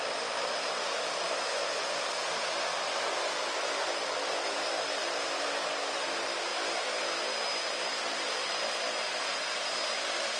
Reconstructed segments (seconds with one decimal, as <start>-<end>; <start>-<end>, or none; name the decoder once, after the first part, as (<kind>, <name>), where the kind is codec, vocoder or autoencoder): none